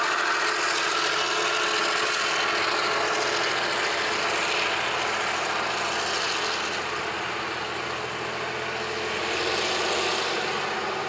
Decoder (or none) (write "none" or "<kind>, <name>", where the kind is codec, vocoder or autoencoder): none